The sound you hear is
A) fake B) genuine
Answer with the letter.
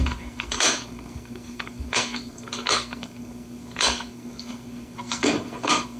A